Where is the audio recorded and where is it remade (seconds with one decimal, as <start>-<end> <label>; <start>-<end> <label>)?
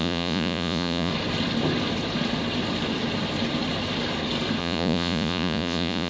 0.0-1.1 remade; 1.1-4.6 recorded; 4.6-6.1 remade